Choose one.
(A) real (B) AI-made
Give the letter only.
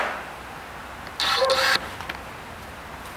A